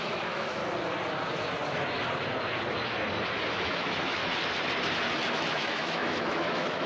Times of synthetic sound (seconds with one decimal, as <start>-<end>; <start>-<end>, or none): 0.0-0.6; 3.5-4.2; 5.3-6.9